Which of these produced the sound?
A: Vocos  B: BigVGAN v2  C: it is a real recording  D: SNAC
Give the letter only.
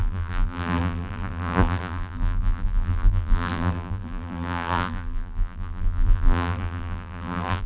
B